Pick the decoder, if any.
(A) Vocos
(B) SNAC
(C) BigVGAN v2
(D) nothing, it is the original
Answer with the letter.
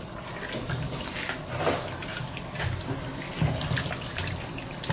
D